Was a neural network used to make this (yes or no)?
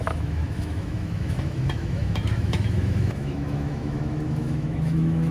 yes